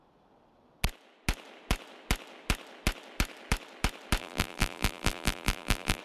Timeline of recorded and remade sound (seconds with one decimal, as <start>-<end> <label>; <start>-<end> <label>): 0.0-4.2 recorded; 4.2-6.0 remade